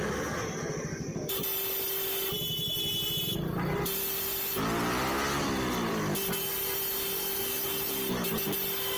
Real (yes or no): yes